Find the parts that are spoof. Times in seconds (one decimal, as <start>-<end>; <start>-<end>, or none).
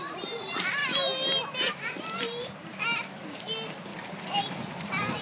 0.0-0.8; 1.7-2.7; 3.3-3.9; 4.4-5.2